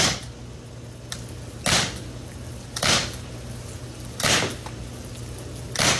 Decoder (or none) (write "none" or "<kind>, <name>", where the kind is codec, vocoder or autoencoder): none